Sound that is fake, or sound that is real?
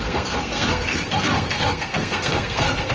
fake